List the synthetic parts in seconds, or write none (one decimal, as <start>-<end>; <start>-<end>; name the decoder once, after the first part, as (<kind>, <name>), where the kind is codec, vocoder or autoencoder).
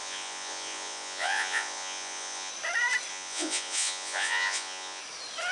0.0-2.5 (vocoder, Vocos); 3.1-5.0